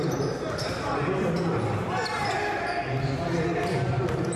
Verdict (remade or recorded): recorded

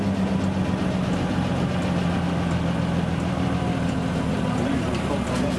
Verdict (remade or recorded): recorded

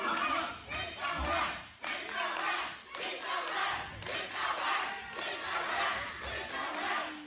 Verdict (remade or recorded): recorded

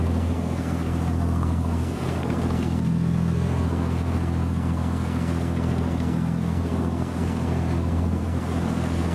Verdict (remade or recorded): remade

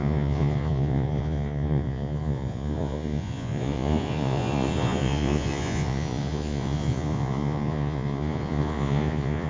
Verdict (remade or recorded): remade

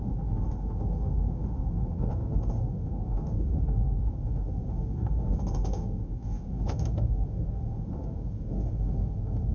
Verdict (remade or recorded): remade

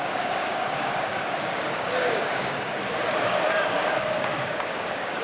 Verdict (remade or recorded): remade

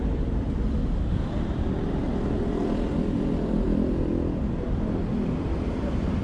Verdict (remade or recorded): remade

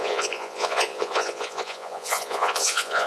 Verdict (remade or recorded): remade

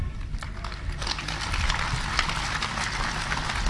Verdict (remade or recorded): recorded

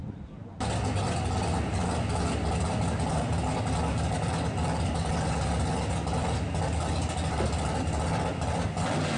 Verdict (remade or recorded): recorded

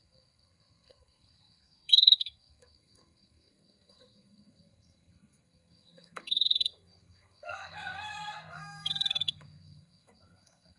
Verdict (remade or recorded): remade